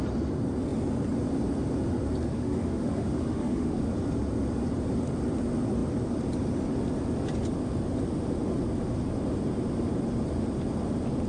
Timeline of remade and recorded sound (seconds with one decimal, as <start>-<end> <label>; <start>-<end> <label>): 0.0-2.3 recorded; 2.3-3.8 remade; 3.8-11.3 recorded